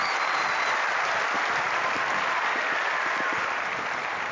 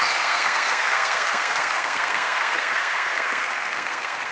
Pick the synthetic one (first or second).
second